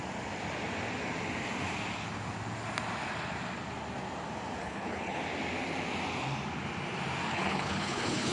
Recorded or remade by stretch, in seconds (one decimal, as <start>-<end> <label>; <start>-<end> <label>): 0.0-4.6 recorded; 4.6-5.2 remade; 5.2-7.3 recorded; 7.3-8.3 remade